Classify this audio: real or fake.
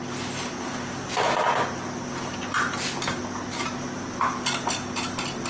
real